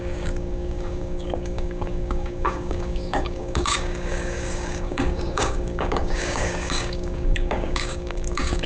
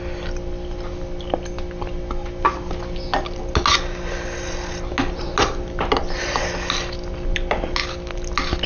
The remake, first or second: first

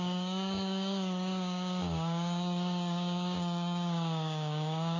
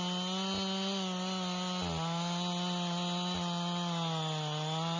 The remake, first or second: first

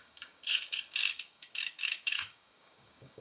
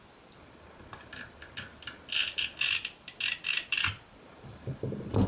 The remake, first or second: first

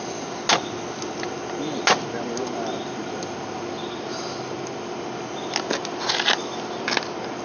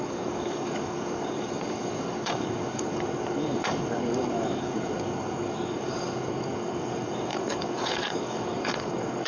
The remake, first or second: second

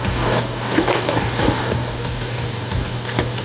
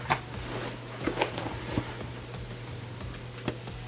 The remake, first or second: first